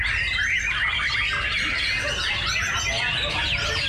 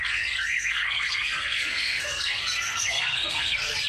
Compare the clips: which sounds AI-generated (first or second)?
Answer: second